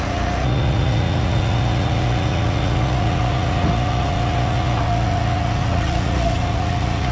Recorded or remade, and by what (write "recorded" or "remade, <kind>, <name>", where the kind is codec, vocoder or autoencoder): remade, vocoder, Vocos